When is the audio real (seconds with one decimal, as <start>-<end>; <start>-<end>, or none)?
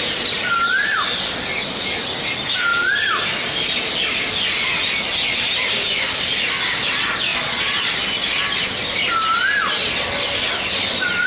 0.0-7.3; 7.9-11.3